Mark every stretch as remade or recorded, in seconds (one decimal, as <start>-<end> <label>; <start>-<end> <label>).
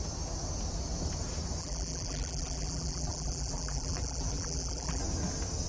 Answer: 0.0-1.6 recorded; 1.6-5.0 remade; 5.0-5.7 recorded